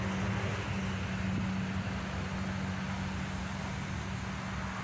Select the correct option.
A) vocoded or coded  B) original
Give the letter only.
B